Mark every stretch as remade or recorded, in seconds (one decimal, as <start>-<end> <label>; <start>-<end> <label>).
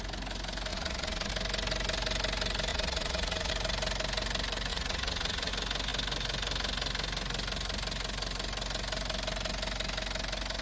0.0-0.7 recorded; 0.7-1.3 remade; 1.3-2.7 recorded; 2.7-3.5 remade; 3.5-4.7 recorded; 4.7-5.5 remade; 5.5-10.6 recorded